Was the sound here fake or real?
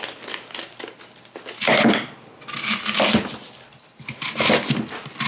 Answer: real